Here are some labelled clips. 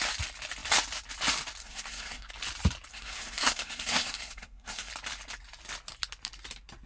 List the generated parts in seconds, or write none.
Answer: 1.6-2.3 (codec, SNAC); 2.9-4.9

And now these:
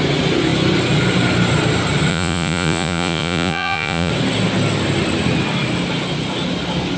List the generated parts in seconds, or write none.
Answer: 2.1-4.1 (vocoder, Vocos)